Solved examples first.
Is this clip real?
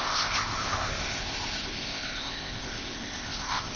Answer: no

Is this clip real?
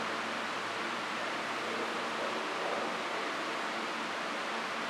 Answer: no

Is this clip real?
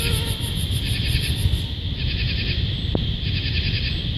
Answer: yes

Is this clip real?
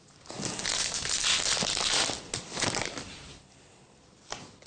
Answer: yes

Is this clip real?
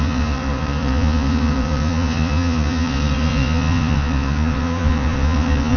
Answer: no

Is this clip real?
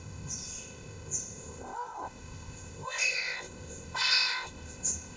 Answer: no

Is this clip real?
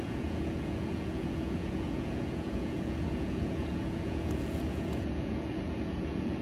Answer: no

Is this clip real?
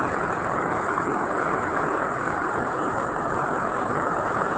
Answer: no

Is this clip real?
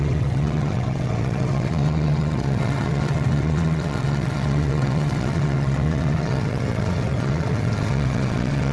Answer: no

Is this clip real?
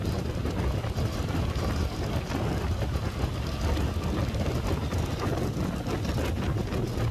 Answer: yes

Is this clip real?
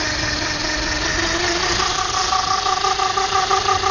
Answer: yes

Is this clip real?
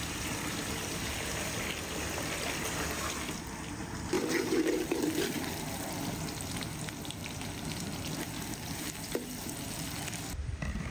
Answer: yes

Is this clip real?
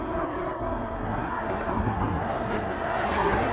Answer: no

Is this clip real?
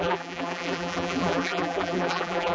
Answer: no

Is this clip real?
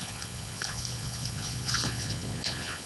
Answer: no